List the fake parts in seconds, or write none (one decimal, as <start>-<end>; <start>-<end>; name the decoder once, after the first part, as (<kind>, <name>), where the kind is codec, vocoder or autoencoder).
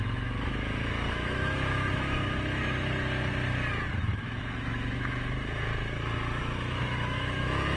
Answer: 0.0-2.2 (autoencoder, DAC-VAE); 4.0-5.7; 6.4-7.8